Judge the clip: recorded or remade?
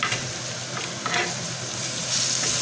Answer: recorded